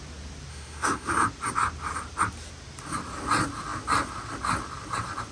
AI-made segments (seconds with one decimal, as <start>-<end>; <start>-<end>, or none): 0.5-1.1

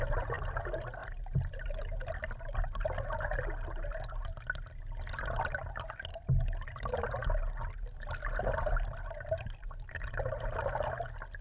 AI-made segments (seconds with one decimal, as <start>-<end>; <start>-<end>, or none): none